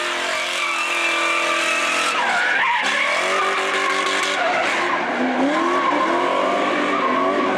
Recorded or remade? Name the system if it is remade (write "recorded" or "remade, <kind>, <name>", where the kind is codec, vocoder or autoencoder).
recorded